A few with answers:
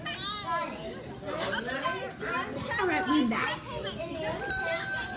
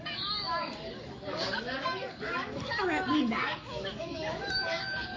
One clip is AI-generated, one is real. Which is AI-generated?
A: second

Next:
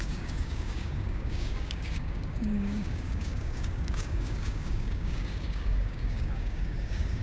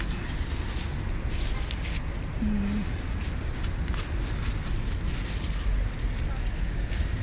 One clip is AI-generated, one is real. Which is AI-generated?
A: first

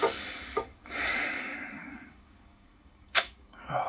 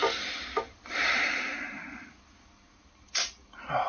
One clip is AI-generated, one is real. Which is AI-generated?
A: first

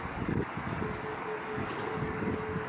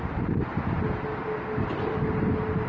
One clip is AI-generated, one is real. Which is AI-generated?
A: first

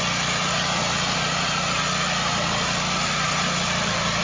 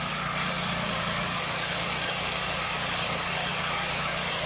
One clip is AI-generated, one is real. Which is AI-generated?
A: second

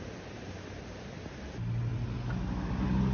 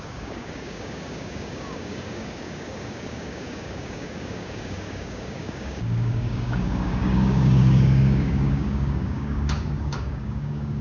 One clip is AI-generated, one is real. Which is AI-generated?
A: second